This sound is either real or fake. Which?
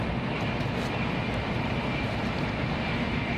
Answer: real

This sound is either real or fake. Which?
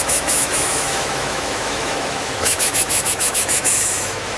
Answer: fake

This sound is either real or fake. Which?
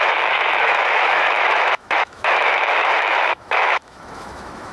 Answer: fake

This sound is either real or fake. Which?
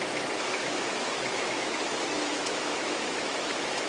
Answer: fake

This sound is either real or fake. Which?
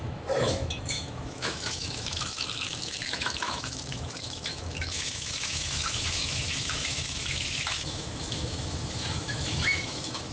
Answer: fake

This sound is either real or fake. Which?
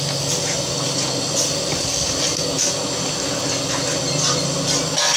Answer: real